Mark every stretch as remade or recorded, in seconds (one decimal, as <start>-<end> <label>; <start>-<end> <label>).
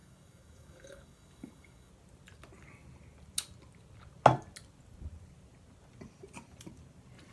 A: 0.0-1.9 remade; 1.9-7.3 recorded